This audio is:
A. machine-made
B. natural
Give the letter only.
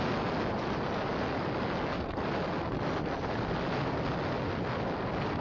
B